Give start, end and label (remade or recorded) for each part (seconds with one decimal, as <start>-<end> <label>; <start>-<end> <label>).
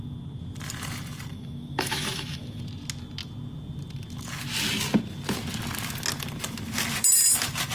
0.0-1.3 recorded; 1.3-2.6 remade; 2.6-7.7 recorded